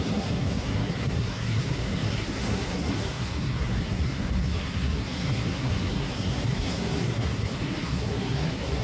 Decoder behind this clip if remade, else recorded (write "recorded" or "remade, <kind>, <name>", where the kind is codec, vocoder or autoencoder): remade, codec, SNAC